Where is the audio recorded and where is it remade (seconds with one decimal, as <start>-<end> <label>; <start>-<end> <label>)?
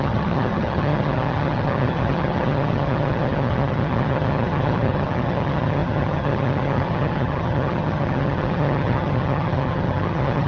0.0-10.5 remade